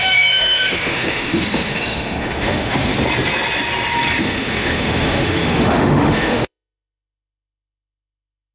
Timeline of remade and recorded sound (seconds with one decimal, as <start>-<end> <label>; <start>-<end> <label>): 0.0-2.9 remade; 2.9-4.2 recorded; 4.2-8.5 remade

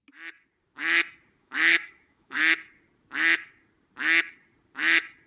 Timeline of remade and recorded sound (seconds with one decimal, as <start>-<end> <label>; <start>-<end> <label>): 0.0-1.4 recorded; 1.4-2.4 remade; 2.4-5.3 recorded

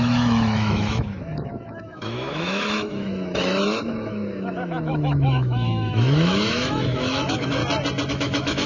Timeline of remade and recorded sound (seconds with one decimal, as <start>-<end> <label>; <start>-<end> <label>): 0.0-7.6 remade; 7.6-8.1 recorded; 8.1-8.7 remade

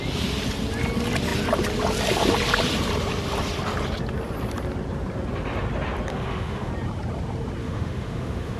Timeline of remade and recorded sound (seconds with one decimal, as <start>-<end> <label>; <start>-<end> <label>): 0.0-6.1 recorded; 6.1-6.7 remade; 6.7-7.6 recorded; 7.6-8.6 remade